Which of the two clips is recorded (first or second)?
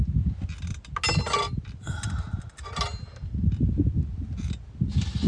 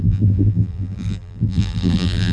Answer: first